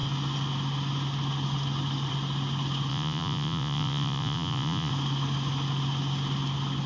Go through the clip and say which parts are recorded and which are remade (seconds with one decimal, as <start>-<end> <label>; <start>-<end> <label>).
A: 0.0-2.9 recorded; 2.9-4.9 remade; 4.9-6.9 recorded